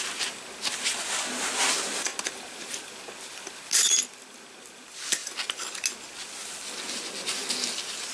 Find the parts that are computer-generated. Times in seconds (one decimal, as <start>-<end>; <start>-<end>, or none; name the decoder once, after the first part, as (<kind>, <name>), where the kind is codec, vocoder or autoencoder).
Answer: none